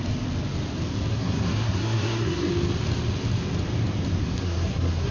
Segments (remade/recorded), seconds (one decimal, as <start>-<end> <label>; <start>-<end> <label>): 0.0-1.1 recorded; 1.1-2.5 remade; 2.5-4.2 recorded; 4.2-5.1 remade